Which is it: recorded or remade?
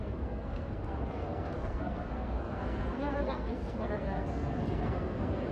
remade